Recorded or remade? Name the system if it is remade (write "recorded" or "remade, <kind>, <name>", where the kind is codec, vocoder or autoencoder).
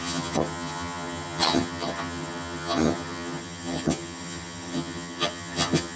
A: remade, vocoder, HiFi-GAN